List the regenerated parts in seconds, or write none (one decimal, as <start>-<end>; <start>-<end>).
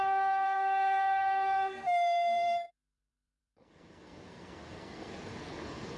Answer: 0.0-6.0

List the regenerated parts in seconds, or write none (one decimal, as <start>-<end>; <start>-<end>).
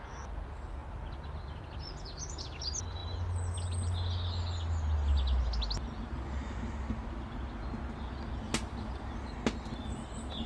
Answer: none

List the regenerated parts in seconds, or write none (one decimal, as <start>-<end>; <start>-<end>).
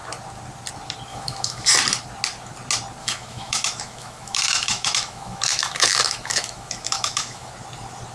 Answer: 1.1-1.7; 3.0-7.5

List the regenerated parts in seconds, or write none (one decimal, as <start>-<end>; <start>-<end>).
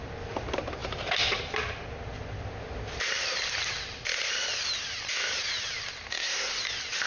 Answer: 6.1-6.6